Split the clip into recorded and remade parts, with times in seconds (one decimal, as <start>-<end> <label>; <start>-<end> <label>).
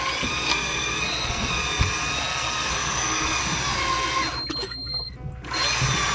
0.0-0.5 recorded; 0.5-1.5 remade; 1.5-2.2 recorded; 2.2-3.4 remade; 3.4-4.6 recorded; 4.6-5.1 remade; 5.1-6.1 recorded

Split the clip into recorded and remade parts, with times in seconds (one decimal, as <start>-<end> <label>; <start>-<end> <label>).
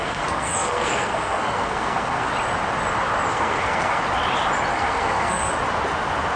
0.0-2.3 remade; 2.3-3.3 recorded; 3.3-4.0 remade; 4.0-4.7 recorded; 4.7-5.5 remade; 5.5-6.4 recorded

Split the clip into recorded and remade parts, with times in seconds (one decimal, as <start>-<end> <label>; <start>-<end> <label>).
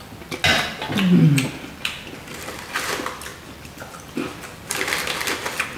0.0-5.8 recorded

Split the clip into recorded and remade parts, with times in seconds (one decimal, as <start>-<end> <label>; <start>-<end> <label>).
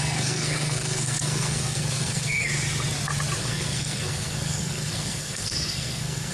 0.0-2.5 remade; 2.5-3.4 recorded; 3.4-6.3 remade